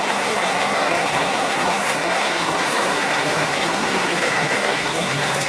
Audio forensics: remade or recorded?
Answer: remade